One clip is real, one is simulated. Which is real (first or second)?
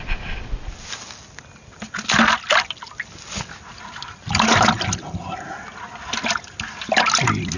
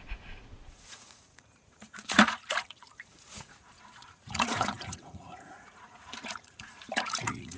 first